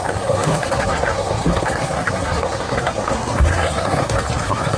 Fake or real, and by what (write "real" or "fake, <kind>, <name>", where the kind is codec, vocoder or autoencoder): fake, codec, SNAC